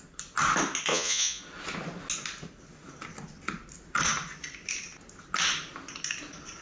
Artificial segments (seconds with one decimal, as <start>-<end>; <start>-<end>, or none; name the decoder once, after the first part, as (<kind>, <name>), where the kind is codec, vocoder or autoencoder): 0.9-1.4 (vocoder, Vocos)